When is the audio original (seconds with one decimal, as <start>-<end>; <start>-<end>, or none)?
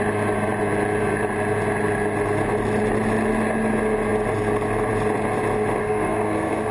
0.0-5.8